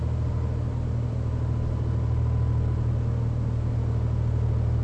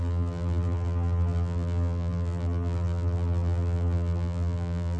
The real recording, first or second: first